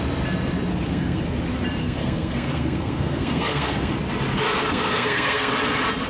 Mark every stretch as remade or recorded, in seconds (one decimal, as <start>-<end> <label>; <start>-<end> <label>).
0.0-0.7 recorded; 0.7-1.4 remade; 1.4-1.8 recorded; 1.8-3.9 remade; 3.9-4.6 recorded; 4.6-5.5 remade; 5.5-6.1 recorded